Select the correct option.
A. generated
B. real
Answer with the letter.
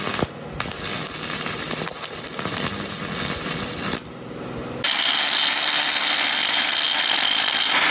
B